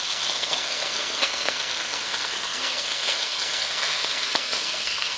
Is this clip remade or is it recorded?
remade